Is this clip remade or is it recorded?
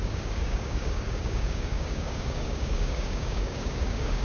remade